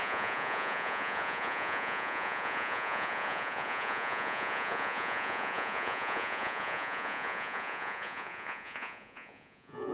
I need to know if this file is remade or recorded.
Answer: remade